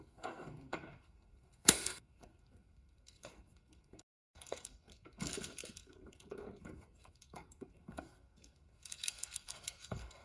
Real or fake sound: fake